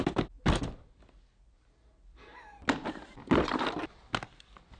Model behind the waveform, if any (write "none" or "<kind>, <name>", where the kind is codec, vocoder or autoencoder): none